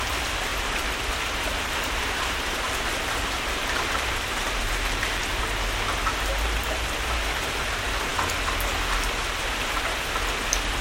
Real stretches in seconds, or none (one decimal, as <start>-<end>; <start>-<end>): 0.0-0.5; 5.4-10.8